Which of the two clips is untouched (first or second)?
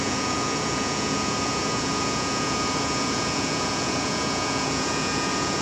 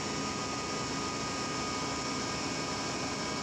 second